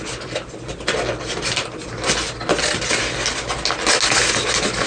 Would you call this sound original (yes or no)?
yes